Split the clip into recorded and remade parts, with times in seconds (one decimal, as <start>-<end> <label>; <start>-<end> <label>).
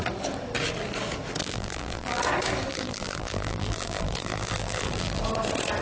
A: 0.0-1.4 recorded; 1.4-2.2 remade; 2.2-2.7 recorded; 2.7-5.2 remade; 5.2-5.8 recorded